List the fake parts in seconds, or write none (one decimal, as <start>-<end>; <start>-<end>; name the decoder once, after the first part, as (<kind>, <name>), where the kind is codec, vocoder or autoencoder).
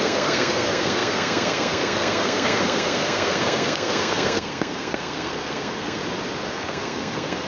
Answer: 0.0-6.0 (codec, SNAC); 6.5-7.5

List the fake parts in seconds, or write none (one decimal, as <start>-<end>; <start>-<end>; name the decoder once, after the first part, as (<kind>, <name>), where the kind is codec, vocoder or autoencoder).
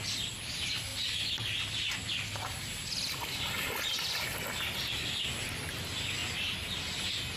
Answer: none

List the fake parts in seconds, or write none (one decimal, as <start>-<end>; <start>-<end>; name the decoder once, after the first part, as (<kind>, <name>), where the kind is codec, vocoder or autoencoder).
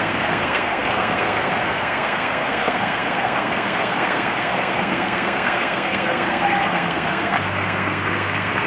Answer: 0.0-8.7 (codec, SNAC)